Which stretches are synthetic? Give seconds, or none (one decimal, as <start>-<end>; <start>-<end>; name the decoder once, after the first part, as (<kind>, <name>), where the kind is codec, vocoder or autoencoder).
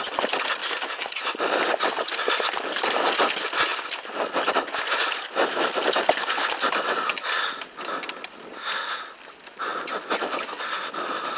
0.6-2.1 (vocoder, BigVGAN v2)